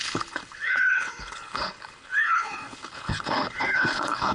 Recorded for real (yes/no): no